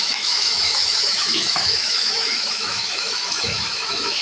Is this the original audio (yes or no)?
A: no